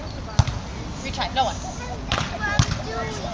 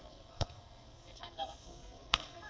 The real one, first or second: first